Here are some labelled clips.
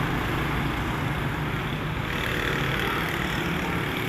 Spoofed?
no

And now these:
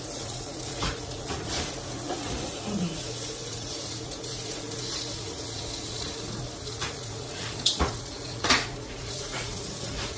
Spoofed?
yes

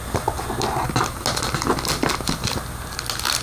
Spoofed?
no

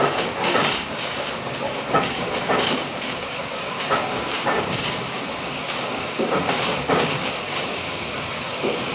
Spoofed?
yes